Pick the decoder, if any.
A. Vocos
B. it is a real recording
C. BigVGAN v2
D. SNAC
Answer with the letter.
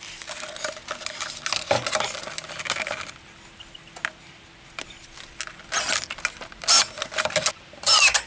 B